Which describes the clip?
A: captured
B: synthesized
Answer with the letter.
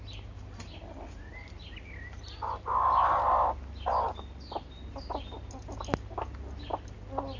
A